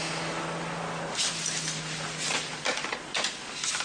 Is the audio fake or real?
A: real